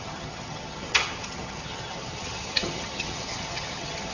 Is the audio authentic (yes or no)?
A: no